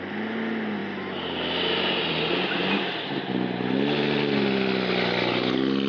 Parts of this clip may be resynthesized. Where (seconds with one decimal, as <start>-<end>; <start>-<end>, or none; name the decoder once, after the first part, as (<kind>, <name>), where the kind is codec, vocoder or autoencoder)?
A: none